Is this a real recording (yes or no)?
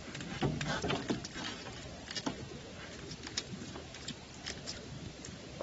yes